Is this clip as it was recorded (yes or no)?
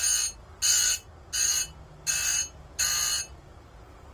yes